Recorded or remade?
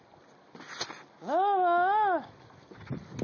recorded